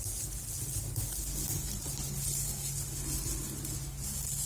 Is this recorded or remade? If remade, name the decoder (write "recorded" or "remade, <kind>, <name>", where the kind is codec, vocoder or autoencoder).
recorded